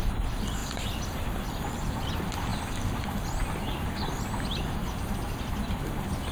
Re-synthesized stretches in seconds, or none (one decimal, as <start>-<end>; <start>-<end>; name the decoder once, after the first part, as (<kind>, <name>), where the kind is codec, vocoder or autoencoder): none